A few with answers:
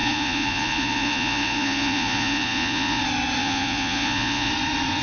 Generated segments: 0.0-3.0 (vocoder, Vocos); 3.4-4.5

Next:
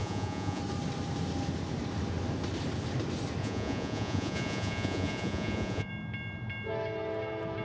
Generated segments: 0.0-0.6 (vocoder, Vocos); 3.4-5.9

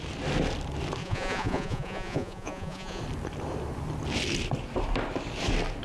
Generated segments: 1.0-3.0 (vocoder, Vocos)

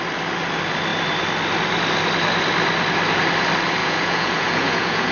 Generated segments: 3.8-5.1 (vocoder, Vocos)

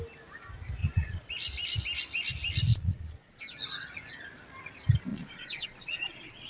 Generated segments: 0.8-1.3 (vocoder, Vocos); 2.7-3.4; 5.1-6.5

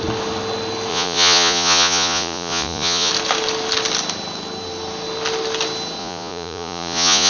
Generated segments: 0.9-3.1 (vocoder, Vocos); 6.0-7.3